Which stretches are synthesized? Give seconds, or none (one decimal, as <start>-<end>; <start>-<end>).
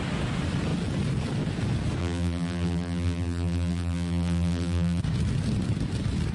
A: 2.0-5.0